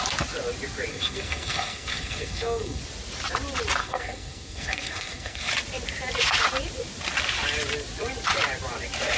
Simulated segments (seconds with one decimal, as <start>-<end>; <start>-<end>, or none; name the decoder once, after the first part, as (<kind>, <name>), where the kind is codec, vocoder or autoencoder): 0.9-2.8 (codec, SNAC); 3.8-5.5